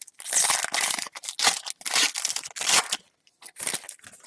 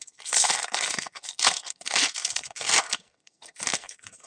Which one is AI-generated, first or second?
second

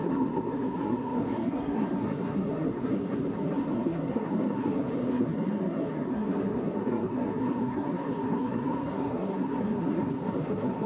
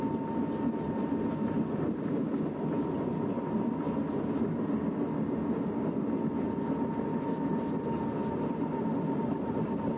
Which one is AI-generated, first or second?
first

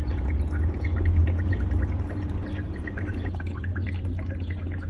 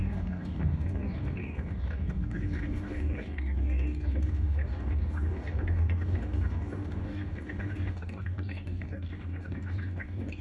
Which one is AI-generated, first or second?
second